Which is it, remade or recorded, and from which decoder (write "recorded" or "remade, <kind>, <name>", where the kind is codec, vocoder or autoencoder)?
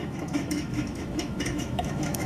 remade, autoencoder, DAC-VAE